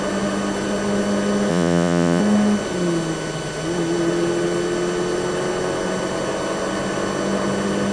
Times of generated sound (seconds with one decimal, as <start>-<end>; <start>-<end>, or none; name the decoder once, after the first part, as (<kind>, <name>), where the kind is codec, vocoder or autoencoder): 1.5-2.2 (vocoder, Vocos)

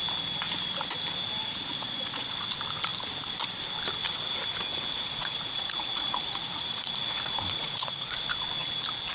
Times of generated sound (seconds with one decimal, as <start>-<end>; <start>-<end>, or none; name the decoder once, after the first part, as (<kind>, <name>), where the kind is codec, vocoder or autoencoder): 1.4-2.4 (vocoder, Vocos); 4.7-8.3

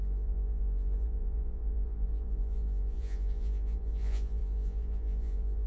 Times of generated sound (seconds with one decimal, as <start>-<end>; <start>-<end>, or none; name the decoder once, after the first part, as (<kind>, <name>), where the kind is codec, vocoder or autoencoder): 0.0-5.7 (vocoder, Vocos)

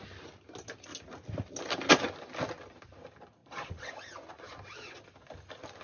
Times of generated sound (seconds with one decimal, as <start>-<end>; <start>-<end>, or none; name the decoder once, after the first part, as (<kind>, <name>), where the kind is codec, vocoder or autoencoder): 3.4-3.9 (vocoder, Vocos)